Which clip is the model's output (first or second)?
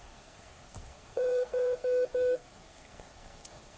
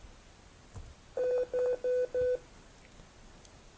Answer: first